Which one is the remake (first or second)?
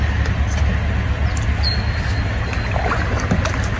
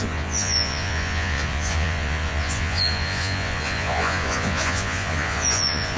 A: second